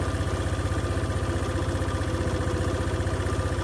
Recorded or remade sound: recorded